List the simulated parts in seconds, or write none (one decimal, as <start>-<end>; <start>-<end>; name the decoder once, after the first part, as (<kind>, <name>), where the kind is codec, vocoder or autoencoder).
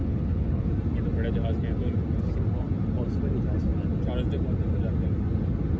0.0-0.7 (codec, HILCodec)